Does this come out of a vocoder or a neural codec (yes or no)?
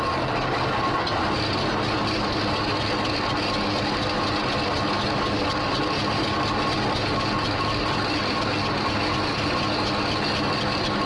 no